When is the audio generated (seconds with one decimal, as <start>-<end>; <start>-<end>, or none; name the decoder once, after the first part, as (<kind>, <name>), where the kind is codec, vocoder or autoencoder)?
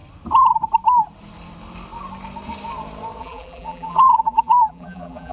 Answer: 3.2-5.3 (vocoder, BigVGAN v2)